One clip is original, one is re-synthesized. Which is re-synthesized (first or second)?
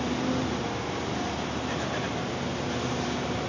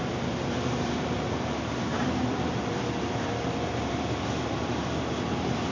second